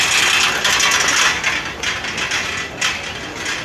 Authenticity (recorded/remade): recorded